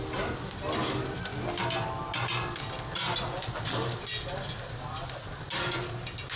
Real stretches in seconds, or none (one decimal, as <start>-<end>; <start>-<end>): 0.0-6.4